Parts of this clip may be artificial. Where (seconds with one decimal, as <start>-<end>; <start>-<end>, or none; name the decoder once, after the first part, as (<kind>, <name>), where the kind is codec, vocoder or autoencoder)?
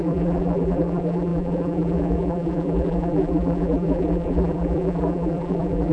0.0-5.9 (vocoder, BigVGAN v2)